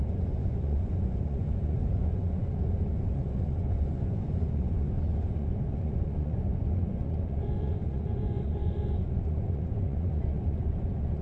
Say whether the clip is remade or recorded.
remade